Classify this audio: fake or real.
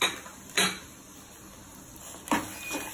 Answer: real